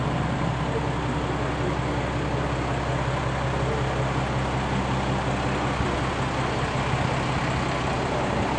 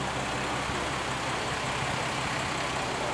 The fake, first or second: second